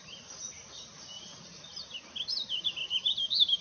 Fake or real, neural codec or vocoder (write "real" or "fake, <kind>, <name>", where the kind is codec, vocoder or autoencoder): real